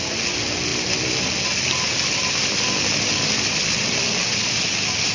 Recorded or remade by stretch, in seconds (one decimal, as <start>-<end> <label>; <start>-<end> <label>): 0.0-5.1 recorded